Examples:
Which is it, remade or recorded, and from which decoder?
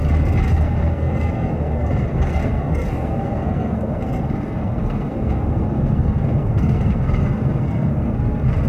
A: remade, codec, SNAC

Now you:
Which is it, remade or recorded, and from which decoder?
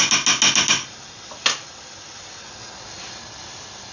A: recorded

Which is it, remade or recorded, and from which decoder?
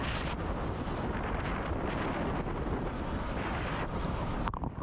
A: recorded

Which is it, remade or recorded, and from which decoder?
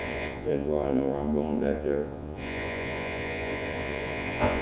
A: remade, vocoder, Vocos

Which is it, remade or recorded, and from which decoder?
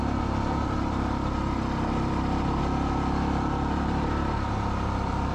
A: recorded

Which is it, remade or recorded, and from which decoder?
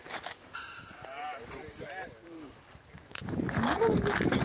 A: remade, vocoder, BigVGAN v2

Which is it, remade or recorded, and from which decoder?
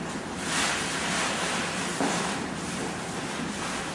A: recorded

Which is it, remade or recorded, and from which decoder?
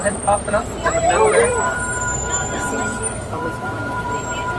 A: remade, vocoder, BigVGAN v2